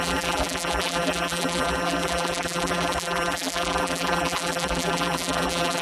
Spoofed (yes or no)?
yes